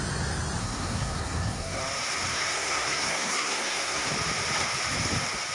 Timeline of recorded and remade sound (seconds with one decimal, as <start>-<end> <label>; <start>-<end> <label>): 0.0-0.6 recorded; 0.6-1.8 remade; 1.8-2.3 recorded; 2.3-4.1 remade; 4.1-5.5 recorded